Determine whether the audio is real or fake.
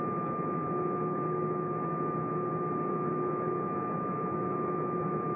fake